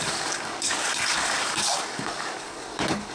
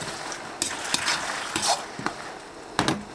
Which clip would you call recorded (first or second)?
second